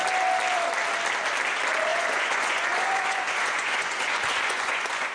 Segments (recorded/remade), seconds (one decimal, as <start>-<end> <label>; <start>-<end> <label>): 0.0-1.9 recorded; 1.9-5.1 remade